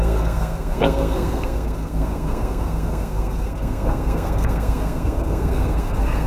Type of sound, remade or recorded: remade